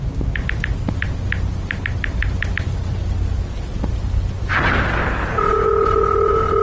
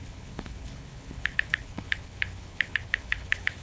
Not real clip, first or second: second